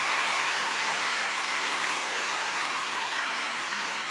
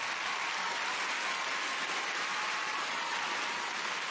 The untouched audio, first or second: second